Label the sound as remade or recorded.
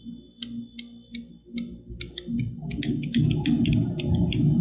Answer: recorded